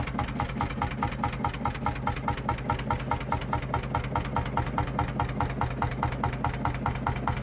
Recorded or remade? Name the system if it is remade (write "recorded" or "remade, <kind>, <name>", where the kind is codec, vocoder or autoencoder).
recorded